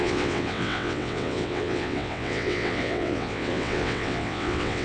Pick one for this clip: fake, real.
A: fake